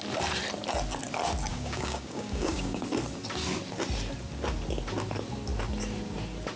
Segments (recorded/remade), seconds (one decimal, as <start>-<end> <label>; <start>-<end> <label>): 0.0-1.5 recorded; 1.5-2.8 remade; 2.8-6.6 recorded